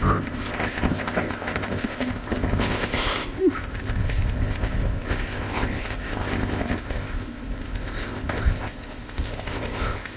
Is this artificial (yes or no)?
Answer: yes